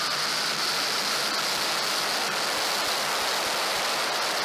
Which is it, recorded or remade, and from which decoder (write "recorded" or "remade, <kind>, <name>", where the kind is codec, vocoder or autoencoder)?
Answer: recorded